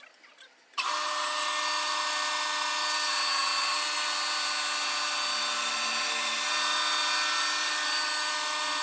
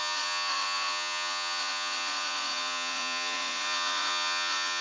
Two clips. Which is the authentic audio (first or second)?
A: first